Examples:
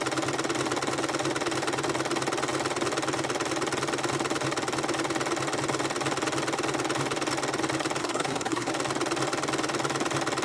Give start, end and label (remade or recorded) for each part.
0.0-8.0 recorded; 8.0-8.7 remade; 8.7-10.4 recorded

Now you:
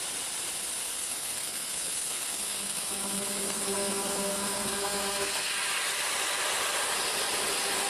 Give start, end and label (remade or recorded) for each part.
0.0-0.8 recorded; 0.8-5.5 remade; 5.5-7.9 recorded

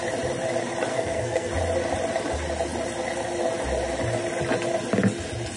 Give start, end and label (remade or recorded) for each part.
0.0-0.9 recorded; 0.9-1.5 remade; 1.5-5.6 recorded